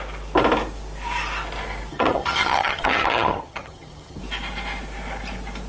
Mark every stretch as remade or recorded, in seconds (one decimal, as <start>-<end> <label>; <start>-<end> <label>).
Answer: 0.0-1.9 recorded; 1.9-4.2 remade; 4.2-5.7 recorded